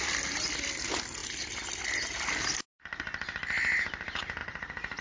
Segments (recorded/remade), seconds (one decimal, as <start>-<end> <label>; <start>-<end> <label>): 0.0-4.4 recorded; 4.4-5.0 remade